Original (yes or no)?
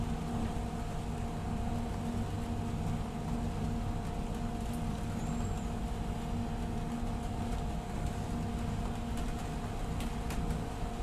yes